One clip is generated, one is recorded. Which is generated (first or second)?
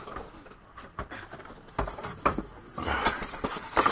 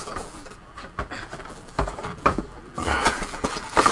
second